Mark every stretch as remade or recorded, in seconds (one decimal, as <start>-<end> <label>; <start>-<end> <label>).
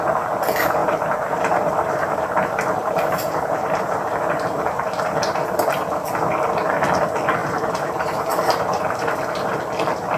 0.0-0.8 recorded; 0.8-5.7 remade; 5.7-7.4 recorded; 7.4-9.5 remade; 9.5-10.2 recorded